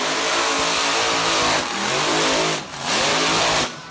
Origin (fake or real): real